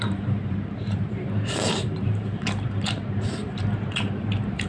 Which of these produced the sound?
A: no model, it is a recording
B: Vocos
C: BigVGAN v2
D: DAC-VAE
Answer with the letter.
C